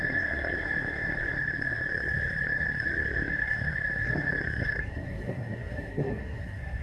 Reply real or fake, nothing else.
fake